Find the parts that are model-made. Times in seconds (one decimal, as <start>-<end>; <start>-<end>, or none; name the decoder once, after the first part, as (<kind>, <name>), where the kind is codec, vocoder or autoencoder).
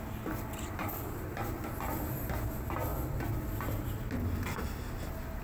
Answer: none